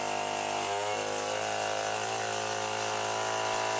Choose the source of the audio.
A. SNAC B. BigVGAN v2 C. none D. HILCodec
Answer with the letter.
C